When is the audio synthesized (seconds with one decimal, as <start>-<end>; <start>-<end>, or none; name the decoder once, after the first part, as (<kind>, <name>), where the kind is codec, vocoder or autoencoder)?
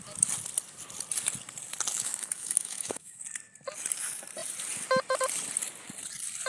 1.9-3.2 (autoencoder, DAC-VAE)